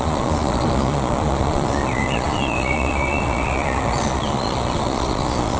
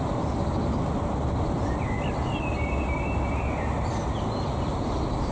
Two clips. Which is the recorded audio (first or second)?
second